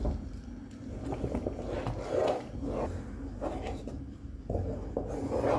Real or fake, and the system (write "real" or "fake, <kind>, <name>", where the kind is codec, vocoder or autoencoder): real